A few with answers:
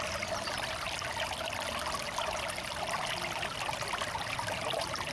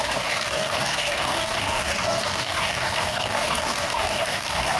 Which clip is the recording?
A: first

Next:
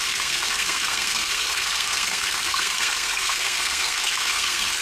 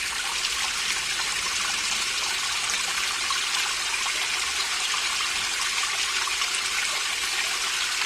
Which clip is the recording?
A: second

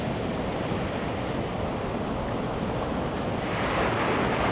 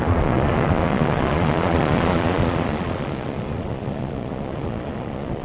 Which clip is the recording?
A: first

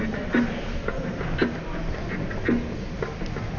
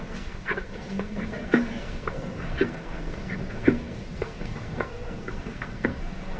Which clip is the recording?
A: first